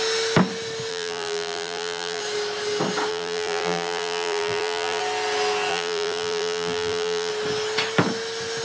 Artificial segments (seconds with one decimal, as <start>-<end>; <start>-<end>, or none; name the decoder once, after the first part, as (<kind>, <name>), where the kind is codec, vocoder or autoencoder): 0.9-2.2 (vocoder, BigVGAN v2); 3.1-5.0; 5.7-7.3